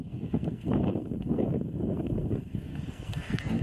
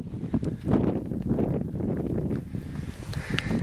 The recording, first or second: second